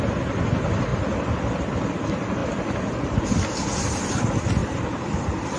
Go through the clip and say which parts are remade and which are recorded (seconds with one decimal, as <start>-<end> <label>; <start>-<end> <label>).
0.0-0.9 recorded; 0.9-2.0 remade; 2.0-4.6 recorded; 4.6-5.6 remade